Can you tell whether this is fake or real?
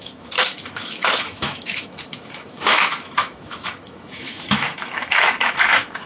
fake